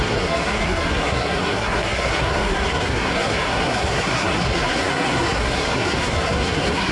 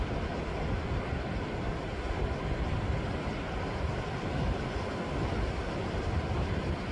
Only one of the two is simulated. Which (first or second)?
first